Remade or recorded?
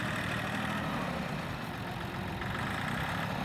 remade